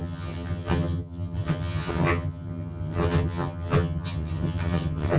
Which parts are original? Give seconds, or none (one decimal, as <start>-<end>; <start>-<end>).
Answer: none